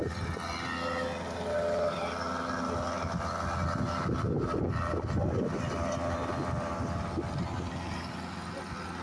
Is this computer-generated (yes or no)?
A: no